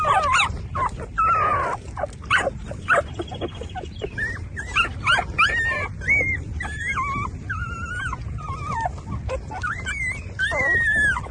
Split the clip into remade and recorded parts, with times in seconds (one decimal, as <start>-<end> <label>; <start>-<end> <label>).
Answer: 0.0-11.3 recorded